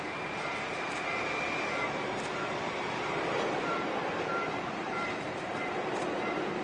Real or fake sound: fake